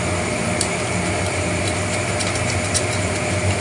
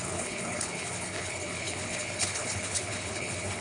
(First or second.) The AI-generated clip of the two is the second